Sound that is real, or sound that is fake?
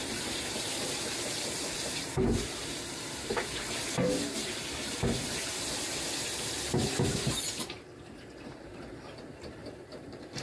fake